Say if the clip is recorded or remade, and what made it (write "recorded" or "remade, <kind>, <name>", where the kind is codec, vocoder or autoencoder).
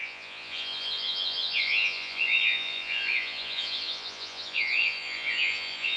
remade, vocoder, Vocos